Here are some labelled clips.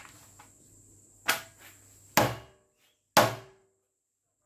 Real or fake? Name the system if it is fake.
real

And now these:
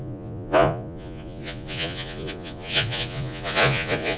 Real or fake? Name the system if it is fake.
fake, vocoder, Vocos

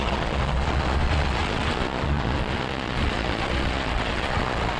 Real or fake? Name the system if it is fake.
fake, vocoder, Vocos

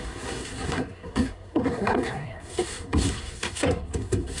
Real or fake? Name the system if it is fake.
fake, codec, SNAC